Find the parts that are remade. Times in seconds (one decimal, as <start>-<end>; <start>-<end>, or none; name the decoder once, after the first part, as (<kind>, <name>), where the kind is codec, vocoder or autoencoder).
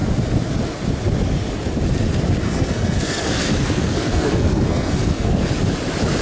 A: 2.4-5.4 (codec, SNAC)